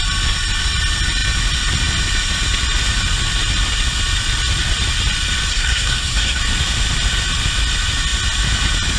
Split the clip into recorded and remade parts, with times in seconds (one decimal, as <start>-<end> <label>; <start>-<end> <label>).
0.0-5.5 recorded; 5.5-6.4 remade; 6.4-9.0 recorded